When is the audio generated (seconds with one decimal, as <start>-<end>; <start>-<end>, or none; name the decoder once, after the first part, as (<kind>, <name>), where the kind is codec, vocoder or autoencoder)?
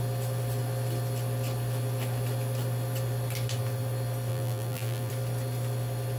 4.3-5.1 (vocoder, BigVGAN v2)